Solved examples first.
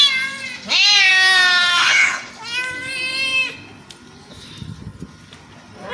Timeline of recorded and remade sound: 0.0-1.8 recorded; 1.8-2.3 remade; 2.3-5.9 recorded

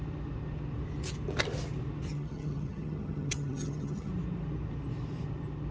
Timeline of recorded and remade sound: 0.0-2.1 recorded; 2.1-4.1 remade; 4.1-5.7 recorded

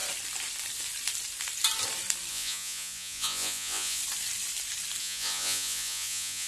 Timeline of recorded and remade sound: 0.0-2.3 recorded; 2.3-4.0 remade; 4.0-5.0 recorded; 5.0-6.5 remade

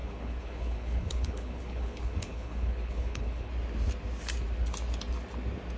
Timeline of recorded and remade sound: 0.0-3.5 remade; 3.5-5.8 recorded

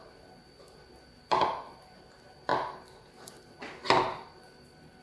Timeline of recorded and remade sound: 0.0-5.0 recorded

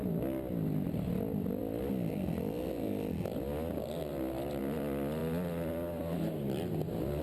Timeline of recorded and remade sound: 0.0-7.2 recorded

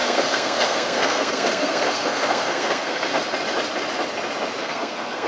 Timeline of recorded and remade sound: 0.0-3.1 remade; 3.1-4.6 recorded; 4.6-5.3 remade

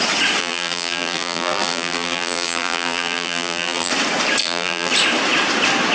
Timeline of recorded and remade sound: 0.0-0.4 recorded; 0.4-3.9 remade; 3.9-4.4 recorded; 4.4-4.9 remade; 4.9-5.9 recorded